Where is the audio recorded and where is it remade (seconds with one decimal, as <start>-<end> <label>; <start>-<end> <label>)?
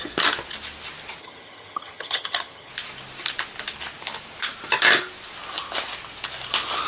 0.0-1.2 recorded; 1.2-2.7 remade; 2.7-6.9 recorded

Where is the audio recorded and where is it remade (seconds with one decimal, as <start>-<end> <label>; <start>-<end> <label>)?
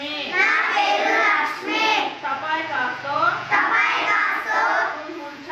0.0-1.9 recorded; 1.9-5.5 remade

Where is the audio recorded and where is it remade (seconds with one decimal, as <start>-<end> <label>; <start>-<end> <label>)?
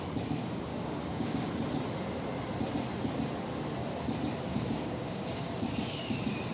0.0-0.7 recorded; 0.7-1.5 remade; 1.5-4.5 recorded; 4.5-5.5 remade; 5.5-6.5 recorded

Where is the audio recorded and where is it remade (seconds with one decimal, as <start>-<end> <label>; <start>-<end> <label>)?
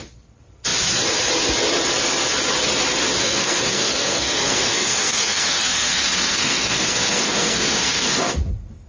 0.0-3.2 recorded; 3.2-8.4 remade; 8.4-8.9 recorded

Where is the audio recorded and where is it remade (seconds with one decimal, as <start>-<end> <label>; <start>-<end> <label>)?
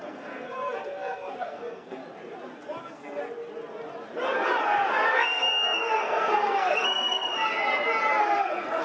0.0-2.0 remade; 2.0-2.8 recorded; 2.8-3.2 remade; 3.2-5.1 recorded; 5.1-7.3 remade; 7.3-8.2 recorded; 8.2-8.8 remade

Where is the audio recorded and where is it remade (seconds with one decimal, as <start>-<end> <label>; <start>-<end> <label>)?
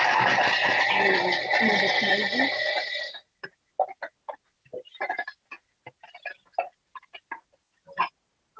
0.0-8.6 recorded